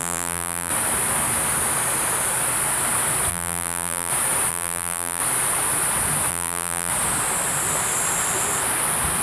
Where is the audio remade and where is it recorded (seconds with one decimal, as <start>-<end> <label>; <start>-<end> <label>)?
0.0-0.7 remade; 0.7-3.3 recorded; 3.3-4.1 remade; 4.1-4.5 recorded; 4.5-5.2 remade; 5.2-6.3 recorded; 6.3-6.9 remade; 6.9-9.2 recorded